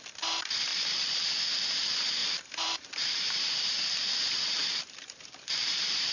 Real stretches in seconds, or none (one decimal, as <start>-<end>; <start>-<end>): 0.0-0.7; 1.3-2.2